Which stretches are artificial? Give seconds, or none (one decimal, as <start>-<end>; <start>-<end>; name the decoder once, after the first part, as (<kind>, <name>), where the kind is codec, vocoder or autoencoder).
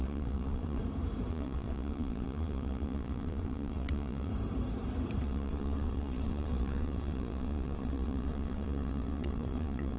0.0-0.8 (vocoder, WaveNeXt); 1.3-4.3; 5.2-10.0